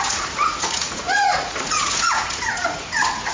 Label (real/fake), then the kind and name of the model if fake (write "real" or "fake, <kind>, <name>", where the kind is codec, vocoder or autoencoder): fake, vocoder, Vocos